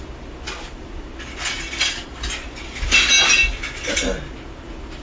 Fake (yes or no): no